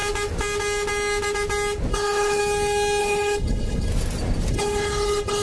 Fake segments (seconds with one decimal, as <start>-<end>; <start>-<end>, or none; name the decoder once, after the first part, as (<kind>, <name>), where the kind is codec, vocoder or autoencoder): 1.9-2.4 (codec, HILCodec); 3.0-3.9; 4.5-5.4